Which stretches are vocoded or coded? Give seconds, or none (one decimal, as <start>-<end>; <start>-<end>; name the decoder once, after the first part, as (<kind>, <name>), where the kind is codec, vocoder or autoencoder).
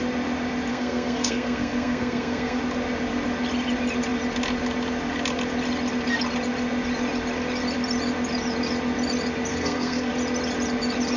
0.7-2.6 (codec, SNAC); 9.5-10.1